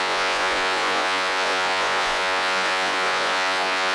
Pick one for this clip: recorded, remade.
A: remade